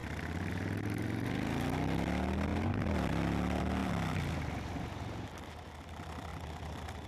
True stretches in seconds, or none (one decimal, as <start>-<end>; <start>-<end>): 0.5-2.5; 3.1-6.3